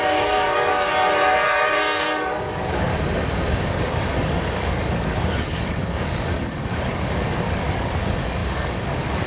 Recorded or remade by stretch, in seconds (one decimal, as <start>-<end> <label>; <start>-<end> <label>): 0.0-2.9 remade; 2.9-3.6 recorded; 3.6-9.3 remade